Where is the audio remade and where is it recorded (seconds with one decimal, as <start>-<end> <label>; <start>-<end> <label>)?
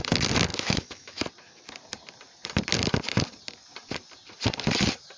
0.0-0.5 recorded; 0.5-1.2 remade; 1.2-5.2 recorded